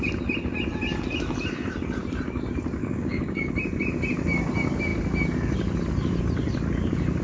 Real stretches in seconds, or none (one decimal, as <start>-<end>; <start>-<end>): 0.0-2.8; 3.5-7.2